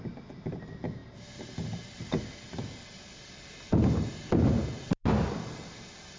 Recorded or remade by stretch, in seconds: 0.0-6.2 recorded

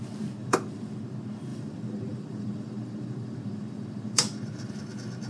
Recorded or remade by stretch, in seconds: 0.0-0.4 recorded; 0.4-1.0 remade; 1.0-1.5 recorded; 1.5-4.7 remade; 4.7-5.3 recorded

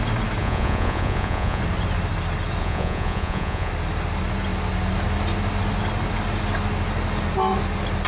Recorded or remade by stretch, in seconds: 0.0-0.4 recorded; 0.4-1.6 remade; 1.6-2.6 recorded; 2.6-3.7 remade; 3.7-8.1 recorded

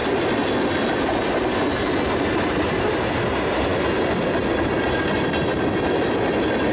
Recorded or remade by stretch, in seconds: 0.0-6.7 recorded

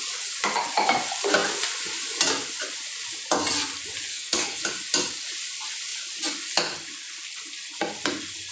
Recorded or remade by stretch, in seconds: 0.0-4.1 recorded; 4.1-4.6 remade; 4.6-8.5 recorded

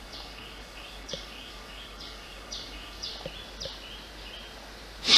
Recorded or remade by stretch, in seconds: 0.0-3.1 remade; 3.1-5.2 recorded